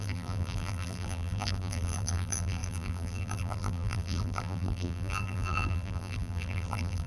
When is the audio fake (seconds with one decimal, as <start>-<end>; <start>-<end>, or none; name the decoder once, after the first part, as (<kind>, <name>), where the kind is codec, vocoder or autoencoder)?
0.0-7.1 (vocoder, BigVGAN v2)